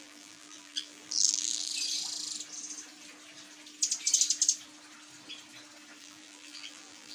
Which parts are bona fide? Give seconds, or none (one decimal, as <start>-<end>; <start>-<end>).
1.7-6.0

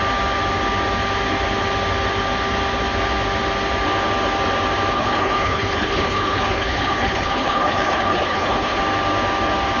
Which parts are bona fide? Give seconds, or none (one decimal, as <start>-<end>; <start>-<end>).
0.0-4.9; 8.8-9.8

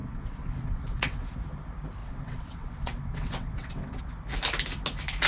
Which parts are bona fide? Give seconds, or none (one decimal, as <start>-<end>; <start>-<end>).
1.4-2.0; 4.0-5.3

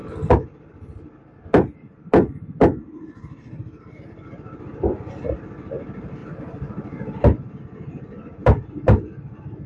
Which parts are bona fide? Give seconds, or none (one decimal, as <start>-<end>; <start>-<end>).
5.1-6.2; 7.6-8.4; 9.0-9.7

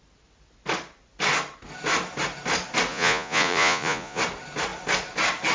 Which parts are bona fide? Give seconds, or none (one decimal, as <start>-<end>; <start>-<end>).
0.0-2.9; 4.2-5.5

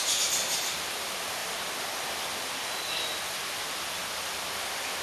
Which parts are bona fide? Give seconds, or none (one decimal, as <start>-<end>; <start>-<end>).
0.0-5.0